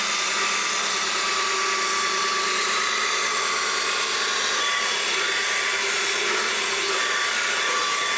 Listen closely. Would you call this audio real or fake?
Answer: real